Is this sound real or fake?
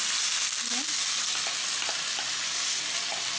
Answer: real